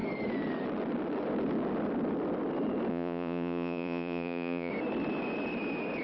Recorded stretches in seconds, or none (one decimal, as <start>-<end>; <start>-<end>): 0.0-2.9; 4.7-6.0

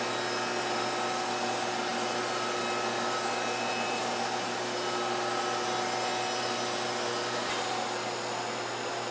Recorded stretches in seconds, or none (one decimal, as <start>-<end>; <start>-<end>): 0.0-9.1

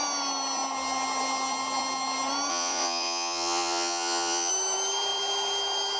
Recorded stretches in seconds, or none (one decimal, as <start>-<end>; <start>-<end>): 0.0-2.5; 4.5-6.0

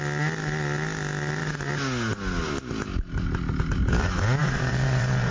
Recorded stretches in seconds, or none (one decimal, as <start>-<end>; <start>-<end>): 0.0-4.4

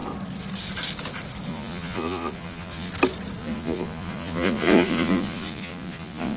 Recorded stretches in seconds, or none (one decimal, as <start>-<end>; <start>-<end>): 0.0-1.5; 2.9-3.4

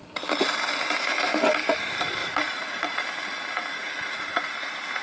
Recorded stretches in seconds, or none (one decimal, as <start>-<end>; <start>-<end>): 0.0-2.2; 3.0-3.7; 4.5-5.0

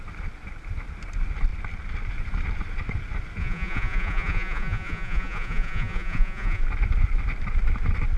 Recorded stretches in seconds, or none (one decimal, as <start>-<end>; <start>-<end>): 0.0-3.4; 6.6-8.2